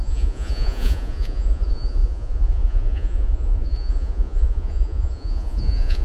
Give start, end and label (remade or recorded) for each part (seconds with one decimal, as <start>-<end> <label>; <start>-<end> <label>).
0.0-6.0 remade